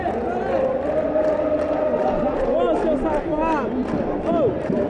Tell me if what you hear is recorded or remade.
recorded